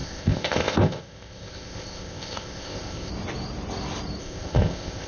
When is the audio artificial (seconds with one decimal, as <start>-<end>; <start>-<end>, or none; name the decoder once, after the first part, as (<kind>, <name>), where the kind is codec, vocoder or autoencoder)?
0.0-3.1 (codec, ZipCodec); 4.2-5.1